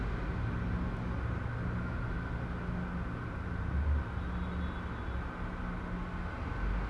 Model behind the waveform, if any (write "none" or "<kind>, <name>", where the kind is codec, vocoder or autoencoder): none